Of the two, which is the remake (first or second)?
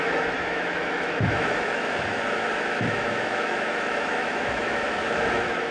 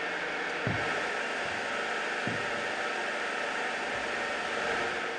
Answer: first